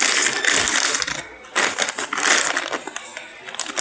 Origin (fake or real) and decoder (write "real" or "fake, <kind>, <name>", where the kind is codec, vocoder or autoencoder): real